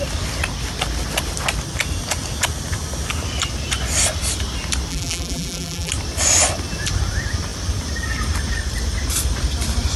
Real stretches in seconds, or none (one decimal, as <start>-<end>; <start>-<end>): 0.0-4.9; 5.9-10.0